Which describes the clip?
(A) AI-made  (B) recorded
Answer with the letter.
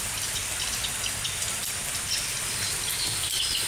B